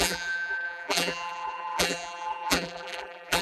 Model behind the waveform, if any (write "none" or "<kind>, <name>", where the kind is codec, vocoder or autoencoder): vocoder, BigVGAN v2